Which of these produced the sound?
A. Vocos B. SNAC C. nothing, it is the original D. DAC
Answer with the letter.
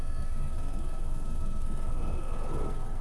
B